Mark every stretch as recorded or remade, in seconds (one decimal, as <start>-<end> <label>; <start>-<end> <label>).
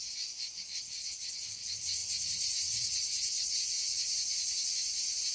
0.0-5.3 recorded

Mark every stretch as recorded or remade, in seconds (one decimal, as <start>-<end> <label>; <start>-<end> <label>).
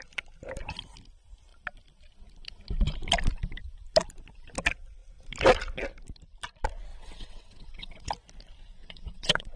0.0-6.9 recorded; 6.9-8.1 remade; 8.1-8.8 recorded; 8.8-9.6 remade